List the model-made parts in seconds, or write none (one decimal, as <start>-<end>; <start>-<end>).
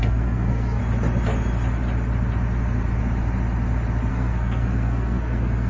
0.0-0.8; 4.1-5.7